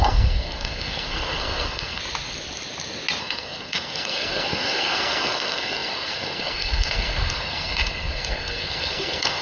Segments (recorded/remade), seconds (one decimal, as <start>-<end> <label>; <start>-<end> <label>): 0.0-2.0 remade; 2.0-3.2 recorded; 3.2-9.4 remade